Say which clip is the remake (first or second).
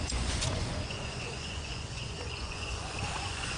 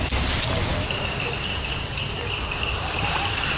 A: first